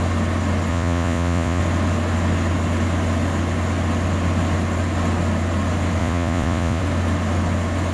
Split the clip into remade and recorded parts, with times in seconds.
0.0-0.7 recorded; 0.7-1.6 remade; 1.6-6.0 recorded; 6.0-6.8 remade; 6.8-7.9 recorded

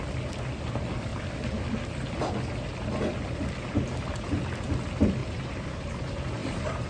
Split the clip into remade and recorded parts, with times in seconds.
0.0-5.2 recorded; 5.2-6.0 remade; 6.0-6.4 recorded; 6.4-6.9 remade